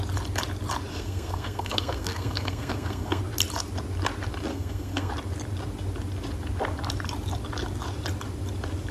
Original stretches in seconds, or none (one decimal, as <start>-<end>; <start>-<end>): 0.0-0.9; 3.2-4.5; 5.1-8.9